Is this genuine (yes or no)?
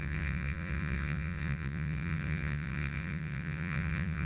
no